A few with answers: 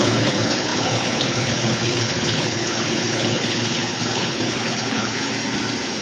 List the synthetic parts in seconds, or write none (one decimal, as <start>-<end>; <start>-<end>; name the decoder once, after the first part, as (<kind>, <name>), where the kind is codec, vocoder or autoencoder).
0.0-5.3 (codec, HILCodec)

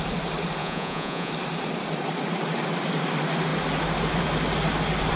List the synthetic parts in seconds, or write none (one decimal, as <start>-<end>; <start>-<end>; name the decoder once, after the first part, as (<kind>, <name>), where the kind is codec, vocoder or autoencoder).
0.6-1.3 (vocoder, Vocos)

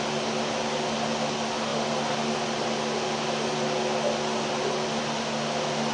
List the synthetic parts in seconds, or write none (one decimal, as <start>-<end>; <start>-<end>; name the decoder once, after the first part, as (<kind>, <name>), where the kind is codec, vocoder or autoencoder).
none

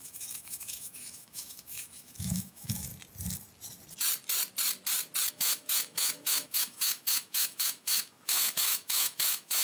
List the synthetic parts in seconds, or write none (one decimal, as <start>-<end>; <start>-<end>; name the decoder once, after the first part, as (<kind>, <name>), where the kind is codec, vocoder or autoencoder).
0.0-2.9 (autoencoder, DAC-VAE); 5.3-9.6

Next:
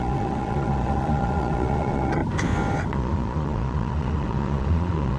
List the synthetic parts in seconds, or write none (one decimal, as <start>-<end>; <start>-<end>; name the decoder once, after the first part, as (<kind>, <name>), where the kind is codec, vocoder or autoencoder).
0.0-2.2 (vocoder, Vocos); 2.9-5.2

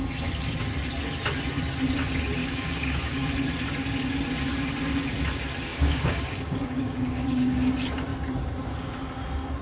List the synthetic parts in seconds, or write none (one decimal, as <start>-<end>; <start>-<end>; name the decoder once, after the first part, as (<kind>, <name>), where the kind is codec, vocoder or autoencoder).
2.4-3.3 (codec, DAC); 5.7-7.7

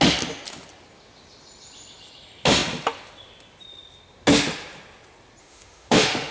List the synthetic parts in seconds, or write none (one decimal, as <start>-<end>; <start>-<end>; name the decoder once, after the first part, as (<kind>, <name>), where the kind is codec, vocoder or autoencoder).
5.4-6.3 (autoencoder, DAC-VAE)

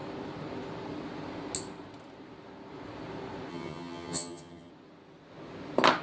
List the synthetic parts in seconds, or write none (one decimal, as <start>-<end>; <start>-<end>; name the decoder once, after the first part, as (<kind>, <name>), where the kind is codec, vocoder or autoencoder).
3.5-4.7 (vocoder, HiFi-GAN)